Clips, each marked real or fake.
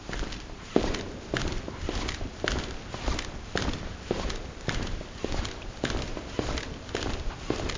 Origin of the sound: fake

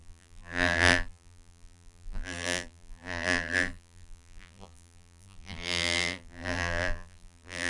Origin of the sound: fake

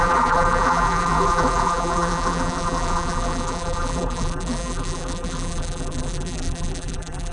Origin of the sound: fake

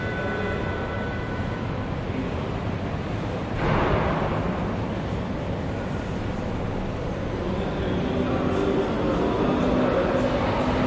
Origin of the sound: real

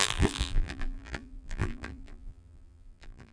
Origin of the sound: fake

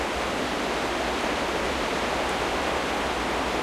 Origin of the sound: real